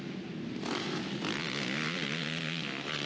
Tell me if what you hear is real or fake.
real